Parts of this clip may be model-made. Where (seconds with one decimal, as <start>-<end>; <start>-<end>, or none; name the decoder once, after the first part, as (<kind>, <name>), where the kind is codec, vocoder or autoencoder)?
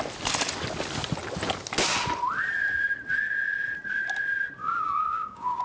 4.6-5.6 (codec, DAC)